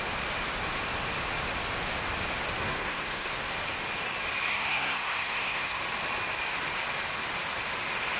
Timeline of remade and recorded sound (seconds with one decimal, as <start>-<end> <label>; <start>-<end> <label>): 0.0-2.6 recorded; 2.6-3.3 remade; 3.3-4.5 recorded; 4.5-5.8 remade; 5.8-8.2 recorded